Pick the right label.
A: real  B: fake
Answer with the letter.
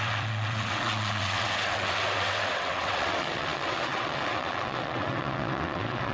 B